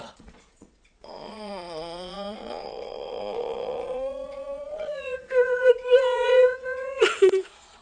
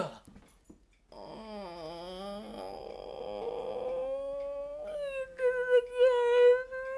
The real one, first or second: second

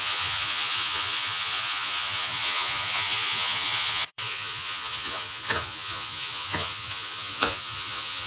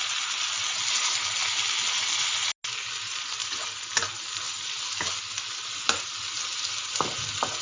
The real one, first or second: second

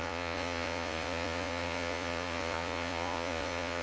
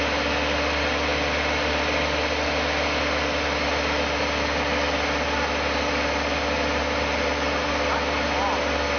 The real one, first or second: second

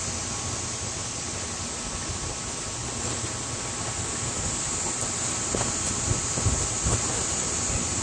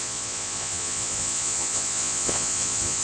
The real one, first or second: first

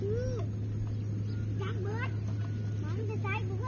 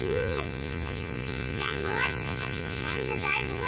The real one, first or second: first